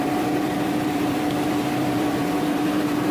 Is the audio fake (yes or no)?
yes